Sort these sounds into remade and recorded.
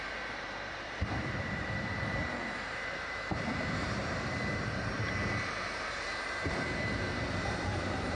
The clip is remade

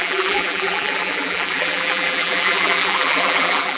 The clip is remade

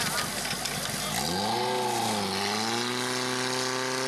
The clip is recorded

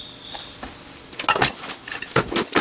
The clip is recorded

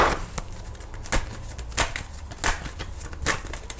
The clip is recorded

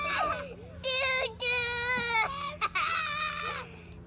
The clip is recorded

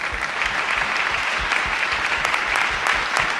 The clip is recorded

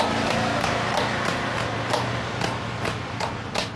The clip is recorded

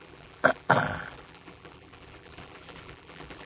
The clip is remade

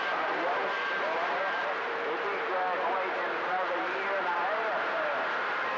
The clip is remade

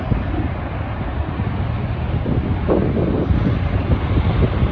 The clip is recorded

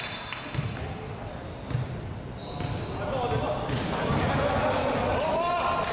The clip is recorded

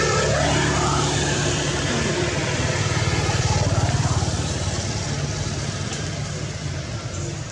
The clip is remade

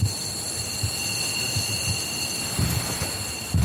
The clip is recorded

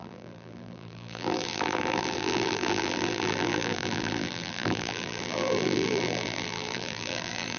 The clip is remade